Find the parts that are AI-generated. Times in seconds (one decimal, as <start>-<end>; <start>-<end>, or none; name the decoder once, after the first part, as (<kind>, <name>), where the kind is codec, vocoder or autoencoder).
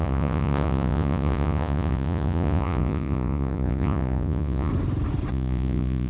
0.0-4.7 (vocoder, Vocos); 5.3-6.1